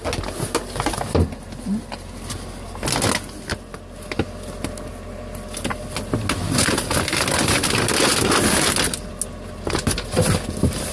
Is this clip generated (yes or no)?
no